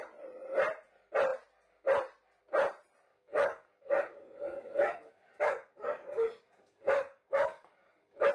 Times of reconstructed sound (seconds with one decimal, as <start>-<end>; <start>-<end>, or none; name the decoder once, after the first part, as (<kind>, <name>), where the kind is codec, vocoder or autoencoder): 3.1-8.3 (codec, DAC)